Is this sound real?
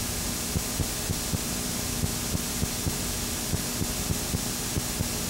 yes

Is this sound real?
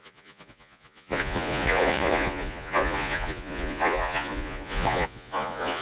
no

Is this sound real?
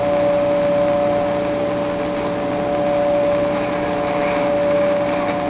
yes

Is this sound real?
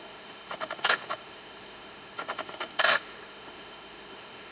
no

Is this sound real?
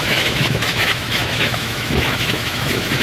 no